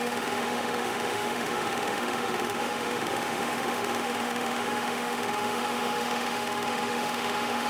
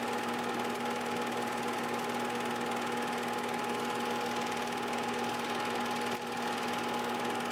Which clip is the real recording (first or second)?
second